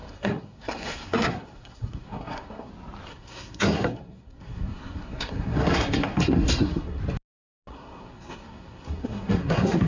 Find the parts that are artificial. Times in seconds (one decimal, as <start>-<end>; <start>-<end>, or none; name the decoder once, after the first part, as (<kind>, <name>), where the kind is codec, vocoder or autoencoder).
0.0-2.7 (codec, SNAC); 3.1-7.0; 7.7-9.9

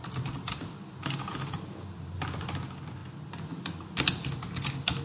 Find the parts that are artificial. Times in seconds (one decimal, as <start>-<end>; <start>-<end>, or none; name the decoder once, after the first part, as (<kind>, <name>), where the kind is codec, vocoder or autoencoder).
0.0-0.5 (vocoder, BigVGAN v2); 3.0-3.9

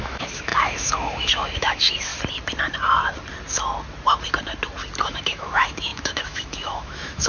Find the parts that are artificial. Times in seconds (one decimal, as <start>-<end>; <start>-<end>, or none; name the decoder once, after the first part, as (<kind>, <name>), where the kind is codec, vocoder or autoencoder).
0.0-2.1 (autoencoder, DAC-VAE); 5.0-7.3

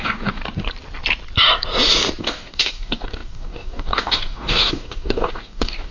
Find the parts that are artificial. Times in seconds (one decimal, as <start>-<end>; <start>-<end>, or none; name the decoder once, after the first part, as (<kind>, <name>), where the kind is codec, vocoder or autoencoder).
0.0-0.4 (codec, DAC); 2.2-5.9

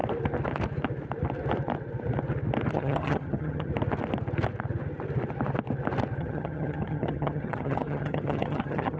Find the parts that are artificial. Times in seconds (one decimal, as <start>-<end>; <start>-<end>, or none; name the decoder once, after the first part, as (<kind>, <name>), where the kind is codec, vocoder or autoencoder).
2.7-3.7 (vocoder, HiFi-GAN); 6.2-9.0

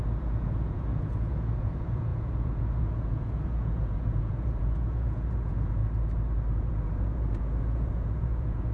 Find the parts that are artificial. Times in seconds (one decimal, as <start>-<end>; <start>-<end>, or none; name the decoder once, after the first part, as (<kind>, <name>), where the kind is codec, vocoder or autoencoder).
0.0-5.8 (vocoder, Vocos); 6.5-8.7

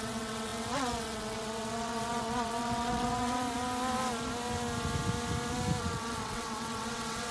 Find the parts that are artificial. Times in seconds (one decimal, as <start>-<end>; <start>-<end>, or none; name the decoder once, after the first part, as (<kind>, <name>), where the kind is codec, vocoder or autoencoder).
0.0-3.4 (vocoder, WaveNeXt); 5.8-7.3